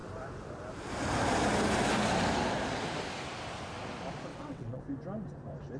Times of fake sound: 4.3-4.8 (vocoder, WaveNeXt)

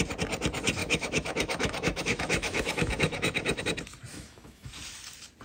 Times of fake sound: 0.8-3.6 (autoencoder, DAC-VAE); 4.1-4.7